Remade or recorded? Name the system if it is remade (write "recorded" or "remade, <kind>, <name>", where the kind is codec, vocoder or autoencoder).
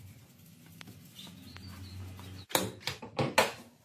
recorded